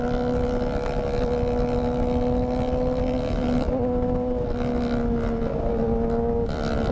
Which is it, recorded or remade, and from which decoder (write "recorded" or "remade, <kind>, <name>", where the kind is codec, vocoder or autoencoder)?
recorded